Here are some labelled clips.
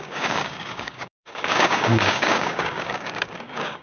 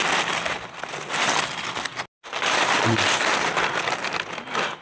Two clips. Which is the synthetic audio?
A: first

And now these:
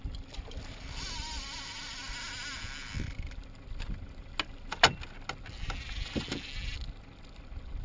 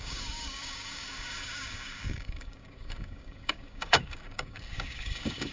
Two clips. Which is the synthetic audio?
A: second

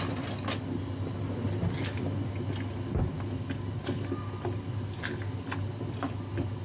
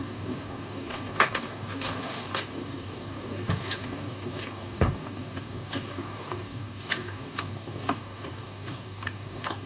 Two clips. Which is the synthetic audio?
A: second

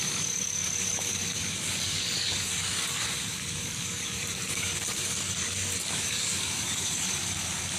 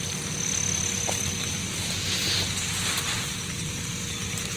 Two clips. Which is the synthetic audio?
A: first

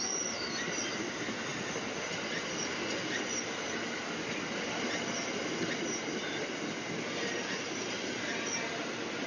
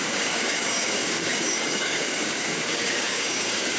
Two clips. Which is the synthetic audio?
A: second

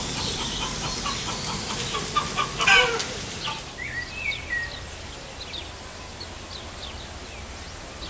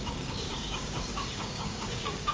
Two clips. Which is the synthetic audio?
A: second